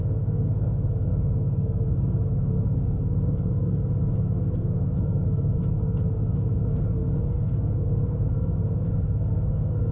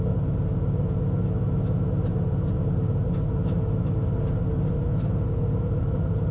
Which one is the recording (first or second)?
second